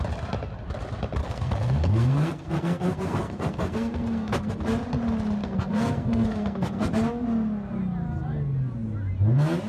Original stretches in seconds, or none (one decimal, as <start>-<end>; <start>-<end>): 0.0-1.2; 4.5-5.4; 6.9-9.7